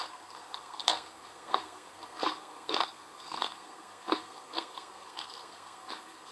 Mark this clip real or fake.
fake